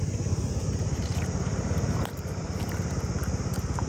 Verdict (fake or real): real